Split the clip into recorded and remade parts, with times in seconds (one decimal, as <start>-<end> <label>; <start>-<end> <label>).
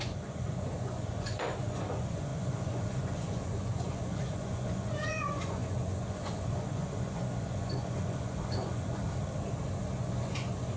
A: 0.0-9.0 remade; 9.0-9.8 recorded; 9.8-10.8 remade